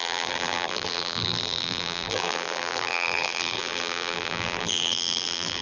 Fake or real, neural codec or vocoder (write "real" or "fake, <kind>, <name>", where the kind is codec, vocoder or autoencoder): fake, vocoder, BigVGAN v2